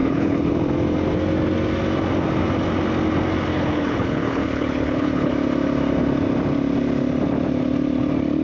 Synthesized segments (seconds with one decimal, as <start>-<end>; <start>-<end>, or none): 0.0-0.6; 3.5-5.3